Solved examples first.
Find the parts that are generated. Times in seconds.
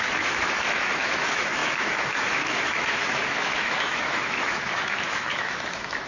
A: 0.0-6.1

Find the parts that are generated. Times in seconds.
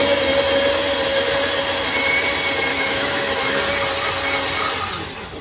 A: 2.7-3.6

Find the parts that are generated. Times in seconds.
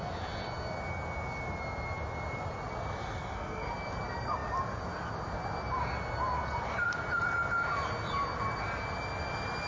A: 3.0-3.7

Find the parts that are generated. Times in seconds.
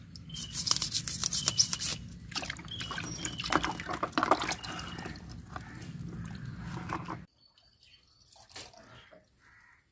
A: none